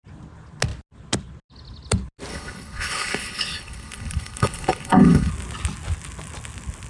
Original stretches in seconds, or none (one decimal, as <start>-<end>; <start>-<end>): 0.0-2.3; 5.3-6.9